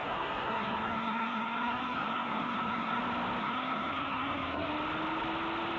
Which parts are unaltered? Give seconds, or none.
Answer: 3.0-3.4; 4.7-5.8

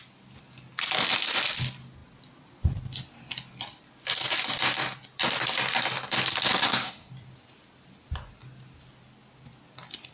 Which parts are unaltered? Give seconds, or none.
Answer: 0.0-6.6; 7.1-10.1

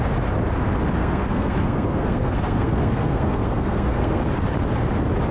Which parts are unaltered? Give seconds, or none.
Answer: 0.0-1.0; 4.2-5.3

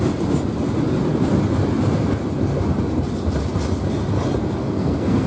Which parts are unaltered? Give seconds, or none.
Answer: 0.0-4.6

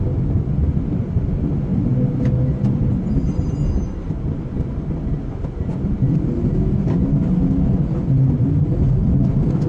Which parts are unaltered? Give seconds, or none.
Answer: 0.0-9.7

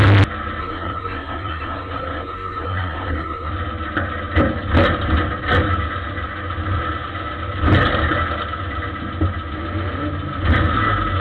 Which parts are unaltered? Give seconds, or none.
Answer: 0.0-0.6; 3.5-11.2